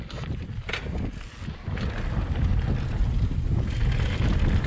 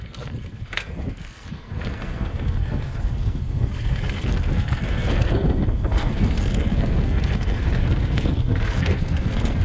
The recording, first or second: first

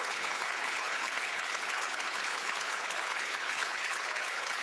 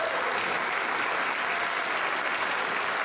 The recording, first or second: second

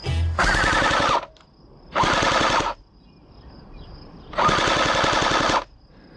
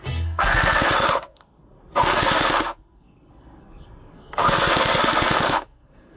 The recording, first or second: first